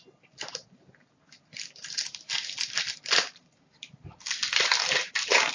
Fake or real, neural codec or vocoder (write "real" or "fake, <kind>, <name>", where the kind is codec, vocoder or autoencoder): real